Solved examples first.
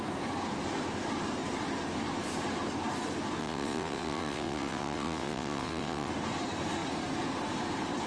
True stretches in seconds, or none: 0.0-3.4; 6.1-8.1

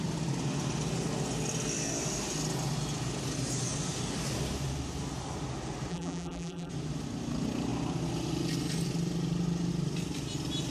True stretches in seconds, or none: 0.0-5.9; 6.7-10.7

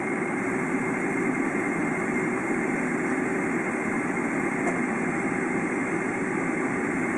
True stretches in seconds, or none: none

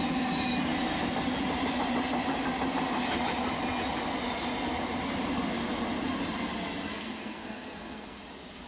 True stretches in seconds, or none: 0.0-6.9; 8.2-8.7

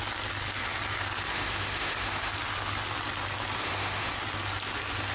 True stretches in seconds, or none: 0.0-1.3; 2.3-3.6; 4.1-5.1

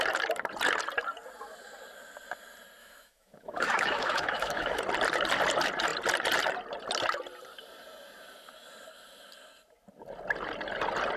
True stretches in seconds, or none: 0.0-2.8; 4.8-11.2